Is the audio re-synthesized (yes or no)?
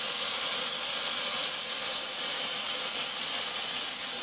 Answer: no